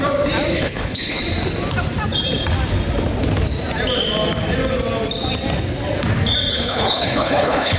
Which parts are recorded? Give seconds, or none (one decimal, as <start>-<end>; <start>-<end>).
0.0-0.5; 1.2-6.5